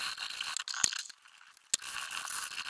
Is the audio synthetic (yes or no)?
no